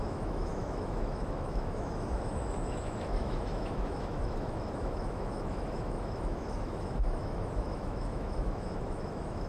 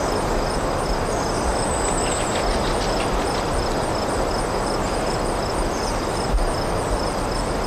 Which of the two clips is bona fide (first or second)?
second